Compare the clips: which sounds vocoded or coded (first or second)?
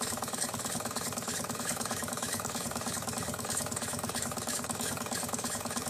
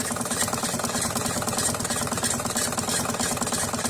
first